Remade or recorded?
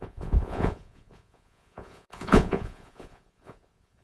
remade